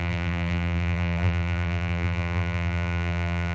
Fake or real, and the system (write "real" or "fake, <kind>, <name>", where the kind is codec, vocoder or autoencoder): fake, vocoder, BigVGAN v2